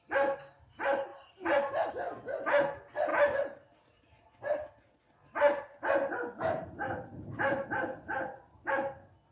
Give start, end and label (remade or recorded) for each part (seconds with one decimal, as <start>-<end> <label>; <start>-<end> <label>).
0.0-1.1 recorded; 1.1-1.9 remade; 1.9-6.0 recorded; 6.0-8.7 remade; 8.7-9.3 recorded